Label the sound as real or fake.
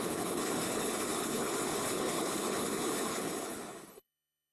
fake